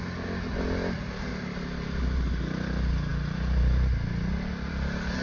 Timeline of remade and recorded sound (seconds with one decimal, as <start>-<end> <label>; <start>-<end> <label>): 0.0-5.2 recorded